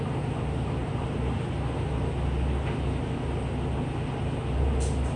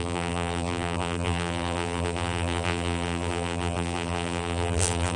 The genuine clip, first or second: first